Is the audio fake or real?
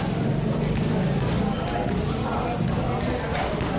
real